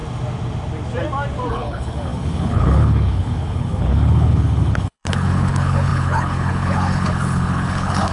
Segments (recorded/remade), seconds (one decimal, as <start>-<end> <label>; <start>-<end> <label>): 0.0-1.5 recorded; 1.5-8.1 remade